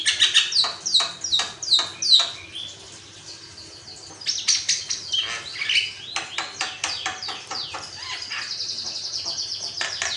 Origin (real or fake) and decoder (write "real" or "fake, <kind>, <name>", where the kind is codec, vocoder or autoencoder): real